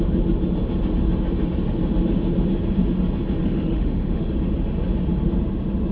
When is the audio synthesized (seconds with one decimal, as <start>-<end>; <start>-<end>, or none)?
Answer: 3.4-4.3